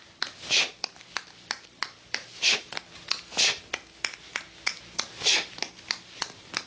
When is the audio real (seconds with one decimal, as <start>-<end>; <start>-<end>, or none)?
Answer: 0.0-6.7

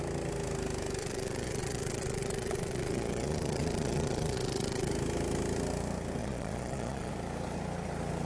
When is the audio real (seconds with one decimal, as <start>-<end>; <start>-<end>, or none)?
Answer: 0.0-1.0; 4.9-6.2; 7.1-8.3

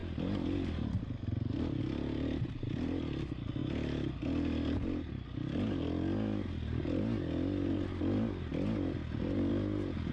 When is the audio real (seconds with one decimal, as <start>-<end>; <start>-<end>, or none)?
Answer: 0.0-10.1

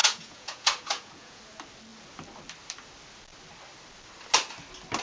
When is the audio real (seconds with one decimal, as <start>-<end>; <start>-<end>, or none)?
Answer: 1.4-5.0

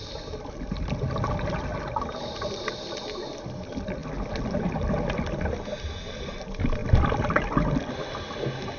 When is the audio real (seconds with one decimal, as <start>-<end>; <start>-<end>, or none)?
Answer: 0.0-8.8

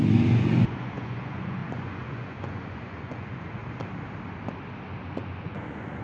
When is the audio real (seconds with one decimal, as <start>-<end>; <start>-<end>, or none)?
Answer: 3.6-5.0

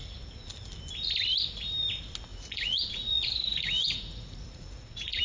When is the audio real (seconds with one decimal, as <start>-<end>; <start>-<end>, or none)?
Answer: 0.0-2.3

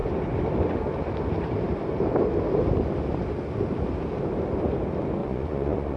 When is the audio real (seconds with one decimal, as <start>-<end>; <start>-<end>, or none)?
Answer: 0.0-5.2